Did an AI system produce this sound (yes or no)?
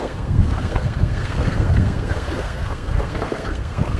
yes